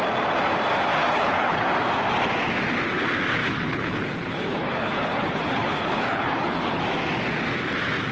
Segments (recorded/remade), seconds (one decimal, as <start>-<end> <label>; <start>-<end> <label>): 0.0-1.0 recorded; 1.0-1.7 remade; 1.7-3.4 recorded; 3.4-6.8 remade; 6.8-8.1 recorded